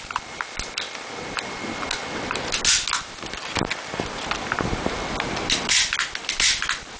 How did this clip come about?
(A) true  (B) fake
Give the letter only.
A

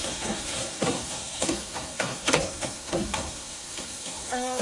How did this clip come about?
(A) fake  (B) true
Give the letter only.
A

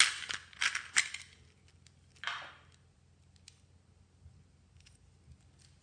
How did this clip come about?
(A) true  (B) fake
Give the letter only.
A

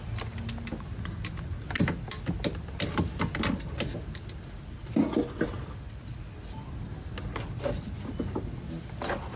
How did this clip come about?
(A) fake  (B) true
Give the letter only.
B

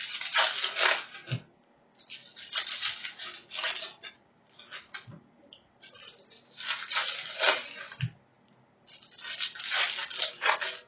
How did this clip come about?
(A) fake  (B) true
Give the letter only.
B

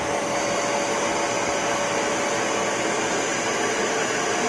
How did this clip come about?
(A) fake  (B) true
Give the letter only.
B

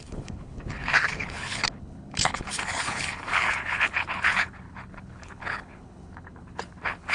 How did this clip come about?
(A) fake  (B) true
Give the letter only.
A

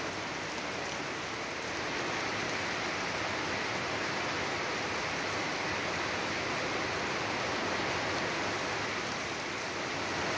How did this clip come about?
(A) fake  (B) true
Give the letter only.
B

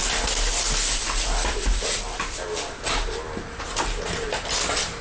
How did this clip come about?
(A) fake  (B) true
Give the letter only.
B